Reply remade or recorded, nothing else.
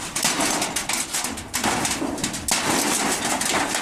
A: recorded